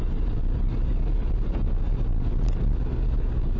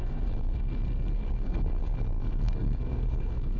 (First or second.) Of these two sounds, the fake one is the second